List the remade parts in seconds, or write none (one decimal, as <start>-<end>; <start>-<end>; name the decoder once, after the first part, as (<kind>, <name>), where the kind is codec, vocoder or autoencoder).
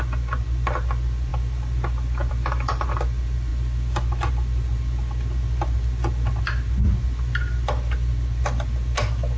none